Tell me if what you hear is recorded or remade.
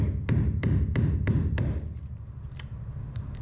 remade